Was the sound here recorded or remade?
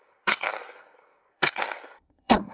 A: remade